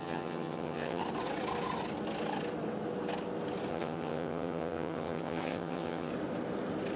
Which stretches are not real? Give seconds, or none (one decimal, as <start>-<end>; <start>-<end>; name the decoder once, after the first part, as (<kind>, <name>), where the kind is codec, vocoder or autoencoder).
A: 0.0-1.0 (vocoder, HiFi-GAN); 3.7-6.1